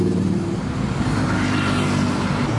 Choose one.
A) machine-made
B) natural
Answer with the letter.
B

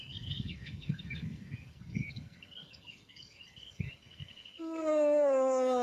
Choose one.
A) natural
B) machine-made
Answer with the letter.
B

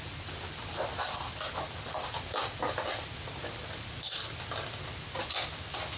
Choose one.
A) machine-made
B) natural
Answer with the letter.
B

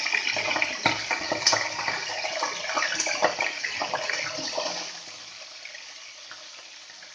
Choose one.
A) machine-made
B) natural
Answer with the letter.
B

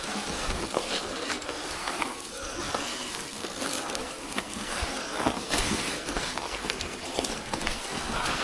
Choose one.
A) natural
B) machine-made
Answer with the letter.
B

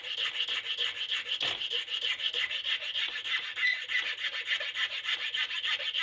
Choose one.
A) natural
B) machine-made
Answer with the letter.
A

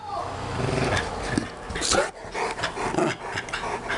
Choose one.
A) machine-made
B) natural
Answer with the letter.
B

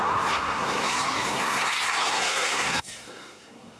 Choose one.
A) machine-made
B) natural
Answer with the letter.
A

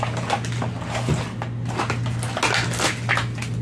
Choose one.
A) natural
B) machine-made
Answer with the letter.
A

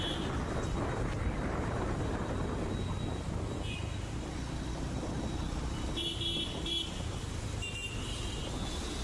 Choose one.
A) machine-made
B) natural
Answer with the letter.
B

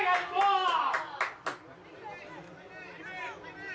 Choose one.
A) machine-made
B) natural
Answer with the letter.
B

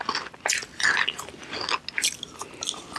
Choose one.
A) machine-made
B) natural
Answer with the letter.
B